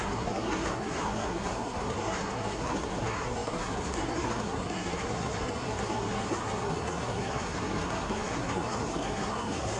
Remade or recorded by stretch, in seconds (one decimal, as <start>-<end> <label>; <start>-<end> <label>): 0.0-9.8 remade